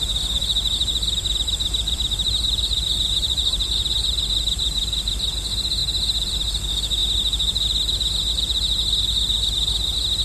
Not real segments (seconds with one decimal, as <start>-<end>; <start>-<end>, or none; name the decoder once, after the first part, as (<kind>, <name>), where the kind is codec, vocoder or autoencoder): 0.8-5.1 (vocoder, BigVGAN v2)